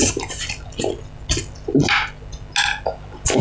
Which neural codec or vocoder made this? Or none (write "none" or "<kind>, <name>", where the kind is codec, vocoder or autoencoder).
none